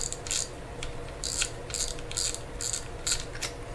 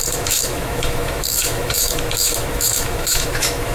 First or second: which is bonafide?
first